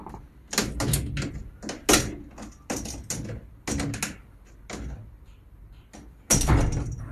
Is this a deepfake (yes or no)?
no